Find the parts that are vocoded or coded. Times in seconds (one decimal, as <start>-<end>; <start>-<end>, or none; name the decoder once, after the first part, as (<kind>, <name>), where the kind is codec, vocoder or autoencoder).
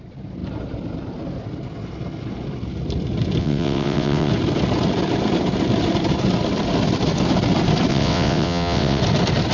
3.4-4.3 (vocoder, WaveNeXt); 7.9-9.0